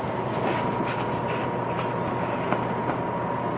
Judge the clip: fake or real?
real